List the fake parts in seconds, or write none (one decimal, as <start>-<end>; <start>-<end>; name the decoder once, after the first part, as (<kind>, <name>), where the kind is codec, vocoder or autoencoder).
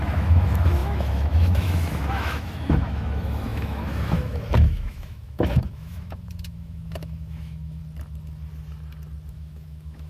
0.0-7.8 (autoencoder, DAC-VAE); 9.3-10.1